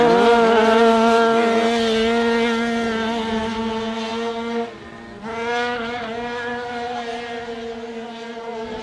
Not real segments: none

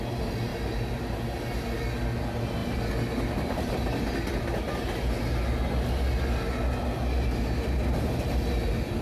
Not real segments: none

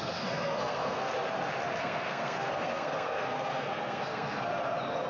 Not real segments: 0.0-1.1 (codec, SNAC); 1.8-4.5